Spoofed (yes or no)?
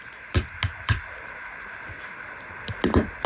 no